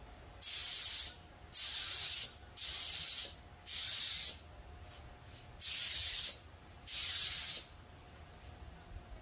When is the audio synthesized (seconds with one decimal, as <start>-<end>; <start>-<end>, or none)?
none